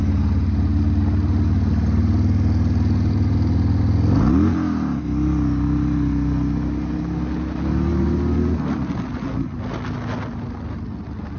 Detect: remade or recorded recorded